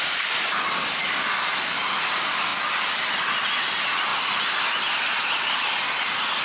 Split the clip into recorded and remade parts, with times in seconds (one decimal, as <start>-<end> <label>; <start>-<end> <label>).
0.0-4.1 recorded; 4.1-5.7 remade; 5.7-6.4 recorded